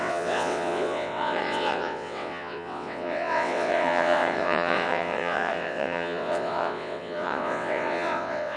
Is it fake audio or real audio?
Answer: fake